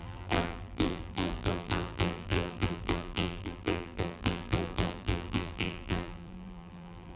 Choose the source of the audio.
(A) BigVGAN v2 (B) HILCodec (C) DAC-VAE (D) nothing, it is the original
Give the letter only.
A